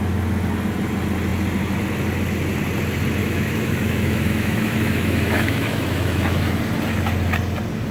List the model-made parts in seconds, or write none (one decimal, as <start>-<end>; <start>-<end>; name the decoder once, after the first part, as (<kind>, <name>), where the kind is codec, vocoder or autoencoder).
3.2-6.6 (autoencoder, DAC-VAE)